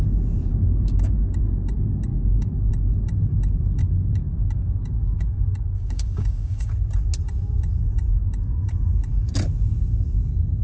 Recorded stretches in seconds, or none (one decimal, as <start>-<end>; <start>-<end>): 0.0-0.5; 1.4-2.1; 2.7-3.8; 6.7-10.6